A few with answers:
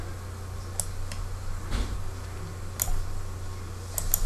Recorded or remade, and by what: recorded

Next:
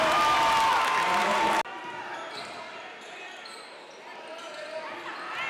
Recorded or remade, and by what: recorded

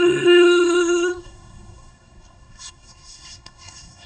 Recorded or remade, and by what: remade, codec, SNAC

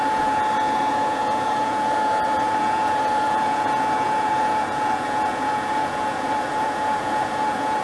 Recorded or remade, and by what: remade, vocoder, Vocos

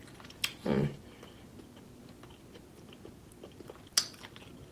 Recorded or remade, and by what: recorded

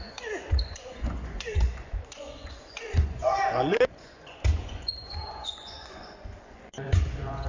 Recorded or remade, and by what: remade, vocoder, Vocos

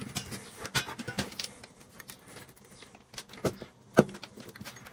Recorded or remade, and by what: recorded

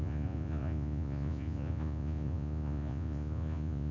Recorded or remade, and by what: remade, vocoder, Vocos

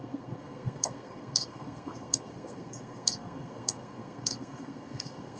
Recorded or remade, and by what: remade, codec, SNAC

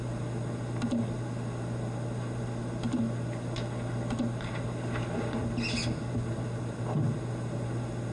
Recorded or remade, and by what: recorded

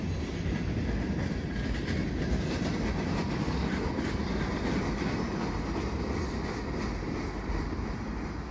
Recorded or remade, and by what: recorded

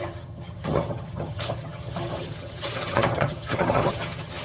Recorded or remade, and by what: remade, vocoder, HiFi-GAN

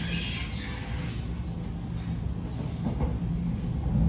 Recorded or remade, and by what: recorded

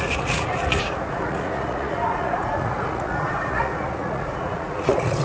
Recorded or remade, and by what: remade, vocoder, Vocos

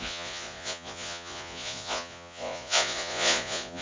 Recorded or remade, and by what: remade, vocoder, Vocos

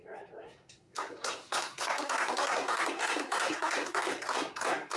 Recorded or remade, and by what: remade, codec, SNAC